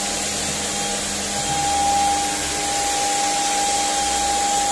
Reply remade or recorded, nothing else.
recorded